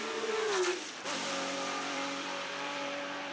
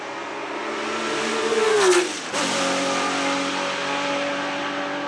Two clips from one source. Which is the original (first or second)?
second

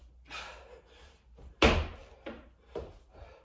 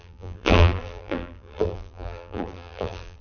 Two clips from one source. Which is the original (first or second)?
first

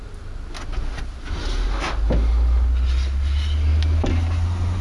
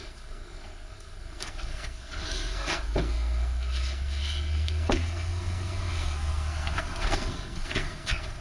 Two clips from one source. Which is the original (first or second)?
first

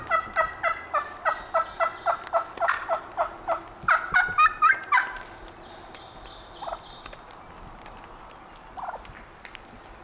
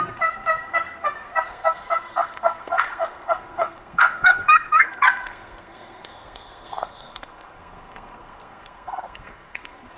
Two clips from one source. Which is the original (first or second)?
first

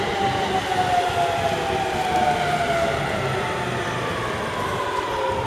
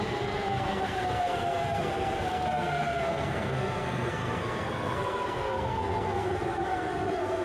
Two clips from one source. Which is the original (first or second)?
first